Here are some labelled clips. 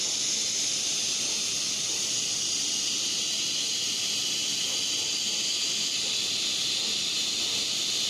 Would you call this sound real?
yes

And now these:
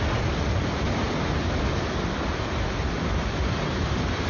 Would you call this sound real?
yes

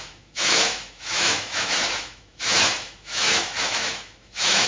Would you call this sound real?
no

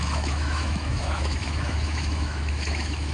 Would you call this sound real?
no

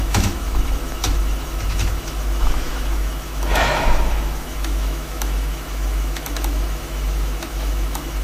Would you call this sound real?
no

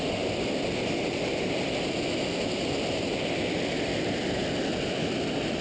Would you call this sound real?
yes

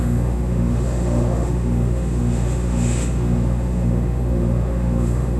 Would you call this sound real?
no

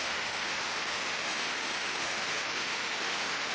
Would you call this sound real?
no